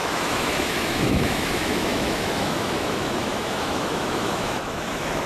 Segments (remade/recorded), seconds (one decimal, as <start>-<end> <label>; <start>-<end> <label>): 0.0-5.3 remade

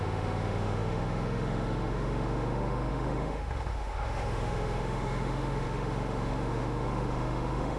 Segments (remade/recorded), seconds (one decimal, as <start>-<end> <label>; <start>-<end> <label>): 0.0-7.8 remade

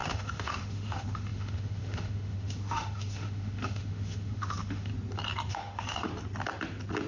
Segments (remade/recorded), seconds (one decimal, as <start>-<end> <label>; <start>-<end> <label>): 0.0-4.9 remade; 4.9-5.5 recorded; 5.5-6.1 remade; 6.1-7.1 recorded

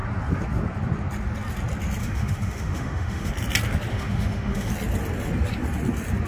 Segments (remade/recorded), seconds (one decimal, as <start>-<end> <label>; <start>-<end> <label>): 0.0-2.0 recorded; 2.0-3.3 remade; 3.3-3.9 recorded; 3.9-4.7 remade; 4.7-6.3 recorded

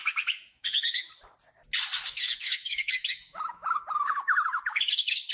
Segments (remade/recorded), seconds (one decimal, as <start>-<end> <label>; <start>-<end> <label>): 0.0-1.1 remade; 1.1-2.0 recorded; 2.0-5.3 remade